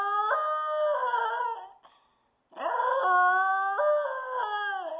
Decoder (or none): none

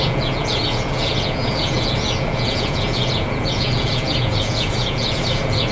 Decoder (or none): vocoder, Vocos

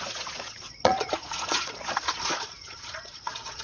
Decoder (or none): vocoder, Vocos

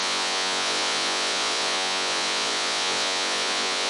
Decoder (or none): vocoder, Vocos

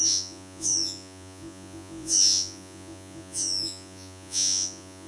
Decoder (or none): vocoder, Vocos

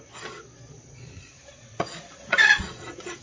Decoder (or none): vocoder, Vocos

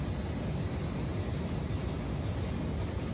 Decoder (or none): none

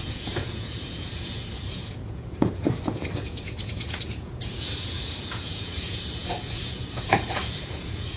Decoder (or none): vocoder, Vocos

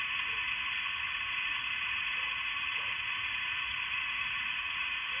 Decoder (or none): vocoder, Vocos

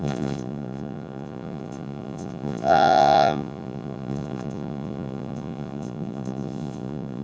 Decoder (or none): vocoder, Vocos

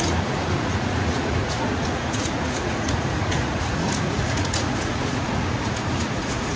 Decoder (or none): vocoder, Vocos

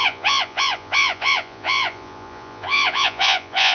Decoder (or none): vocoder, Vocos